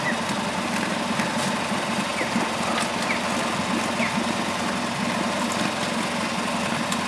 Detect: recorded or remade recorded